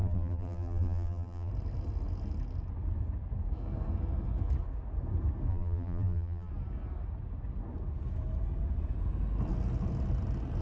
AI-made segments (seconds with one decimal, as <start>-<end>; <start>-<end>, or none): 0.0-1.5; 5.5-6.5